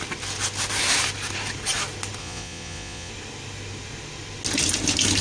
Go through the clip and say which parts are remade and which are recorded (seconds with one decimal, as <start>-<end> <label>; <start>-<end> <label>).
0.0-2.2 recorded; 2.2-3.1 remade; 3.1-5.2 recorded